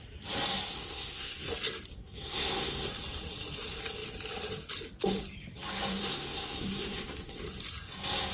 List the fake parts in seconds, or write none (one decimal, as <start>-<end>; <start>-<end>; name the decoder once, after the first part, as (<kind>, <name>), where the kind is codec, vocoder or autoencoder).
0.7-1.5 (codec, SNAC); 2.0-2.9; 6.0-7.4